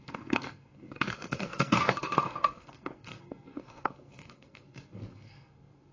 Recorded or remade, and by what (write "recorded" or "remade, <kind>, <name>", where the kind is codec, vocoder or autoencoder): remade, codec, SNAC